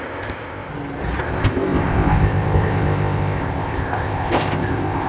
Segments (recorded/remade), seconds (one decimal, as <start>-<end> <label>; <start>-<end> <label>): 0.0-0.7 remade; 0.7-1.2 recorded; 1.2-5.1 remade